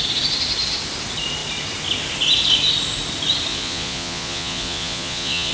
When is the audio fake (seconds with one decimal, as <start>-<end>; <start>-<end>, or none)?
3.5-5.5